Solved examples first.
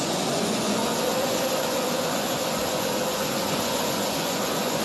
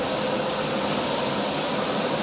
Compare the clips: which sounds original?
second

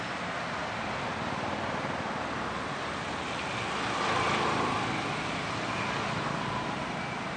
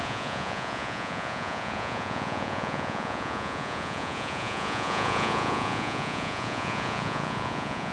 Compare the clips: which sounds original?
first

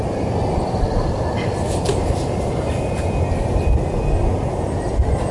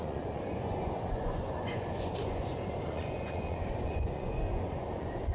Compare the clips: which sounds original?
first